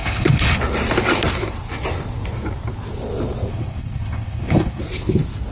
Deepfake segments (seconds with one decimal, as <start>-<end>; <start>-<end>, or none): 0.0-0.6; 3.5-4.8